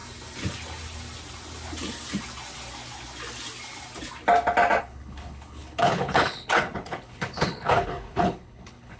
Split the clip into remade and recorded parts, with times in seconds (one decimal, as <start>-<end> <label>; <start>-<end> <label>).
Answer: 0.0-4.8 recorded; 4.8-9.0 remade